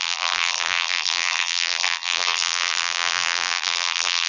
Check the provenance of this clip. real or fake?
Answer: fake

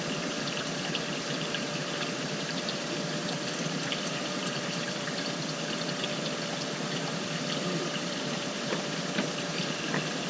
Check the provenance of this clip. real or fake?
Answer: fake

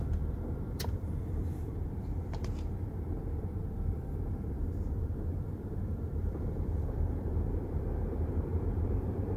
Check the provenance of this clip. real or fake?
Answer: fake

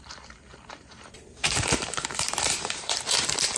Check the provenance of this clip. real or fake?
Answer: fake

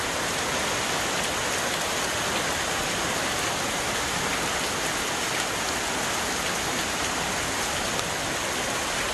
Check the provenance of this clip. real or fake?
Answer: real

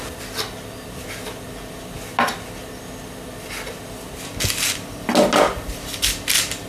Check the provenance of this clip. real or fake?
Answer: real